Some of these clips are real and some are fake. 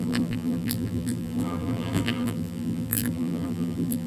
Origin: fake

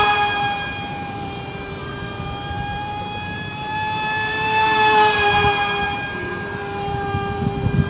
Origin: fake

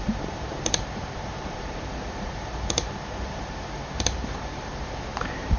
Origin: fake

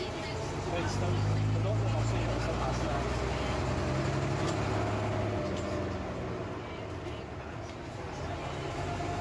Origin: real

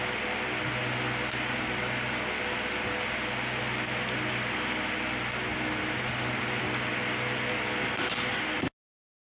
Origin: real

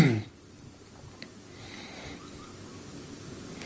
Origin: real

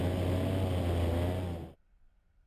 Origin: real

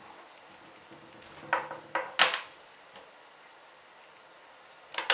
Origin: real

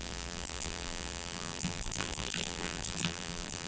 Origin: fake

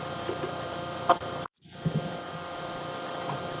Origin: fake